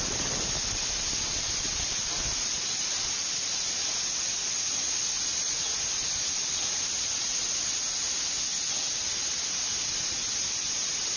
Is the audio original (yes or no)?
yes